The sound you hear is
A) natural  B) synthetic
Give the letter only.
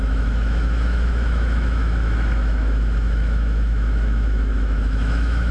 B